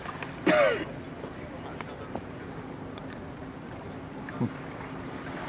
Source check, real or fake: real